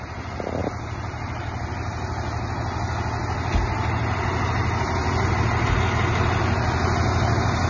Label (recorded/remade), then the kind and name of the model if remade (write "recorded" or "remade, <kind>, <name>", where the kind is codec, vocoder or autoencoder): recorded